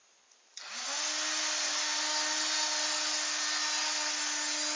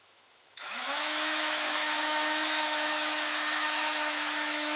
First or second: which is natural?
first